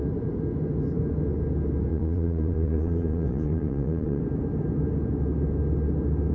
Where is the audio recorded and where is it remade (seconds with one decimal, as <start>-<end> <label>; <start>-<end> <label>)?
0.0-1.9 recorded; 1.9-4.2 remade; 4.2-6.3 recorded